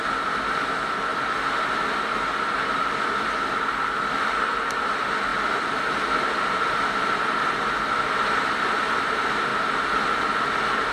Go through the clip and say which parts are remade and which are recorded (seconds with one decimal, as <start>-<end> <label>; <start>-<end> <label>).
0.0-10.9 recorded